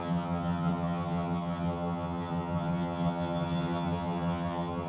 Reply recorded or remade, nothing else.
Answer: remade